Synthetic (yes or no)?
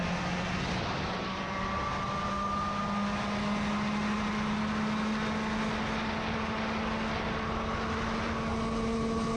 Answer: no